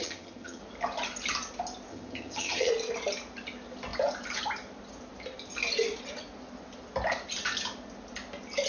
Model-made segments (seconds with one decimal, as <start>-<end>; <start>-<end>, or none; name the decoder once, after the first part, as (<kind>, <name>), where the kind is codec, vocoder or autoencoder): 0.0-0.6 (vocoder, HiFi-GAN); 1.9-2.7